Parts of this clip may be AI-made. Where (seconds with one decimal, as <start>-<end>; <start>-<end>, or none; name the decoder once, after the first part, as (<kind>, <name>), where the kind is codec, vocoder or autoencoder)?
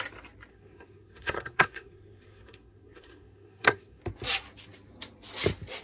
0.5-4.0 (codec, SNAC)